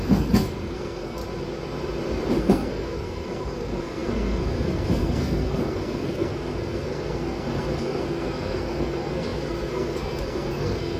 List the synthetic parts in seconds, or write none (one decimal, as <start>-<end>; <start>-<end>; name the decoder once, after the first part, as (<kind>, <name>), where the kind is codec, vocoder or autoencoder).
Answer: 0.0-1.2 (codec, SNAC); 2.4-11.0

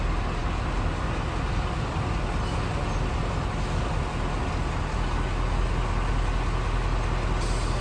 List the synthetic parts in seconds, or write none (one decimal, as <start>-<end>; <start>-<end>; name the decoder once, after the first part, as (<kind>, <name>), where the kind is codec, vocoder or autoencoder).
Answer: none

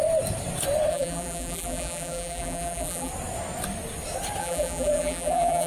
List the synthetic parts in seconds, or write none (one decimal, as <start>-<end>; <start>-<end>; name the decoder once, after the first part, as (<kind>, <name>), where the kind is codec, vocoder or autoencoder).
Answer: 0.9-3.1 (vocoder, BigVGAN v2); 4.4-5.7

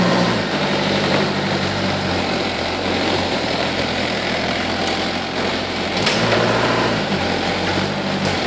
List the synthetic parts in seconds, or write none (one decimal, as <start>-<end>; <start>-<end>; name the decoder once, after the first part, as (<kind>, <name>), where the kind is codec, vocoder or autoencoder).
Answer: 0.0-4.8 (vocoder, BigVGAN v2); 5.5-8.5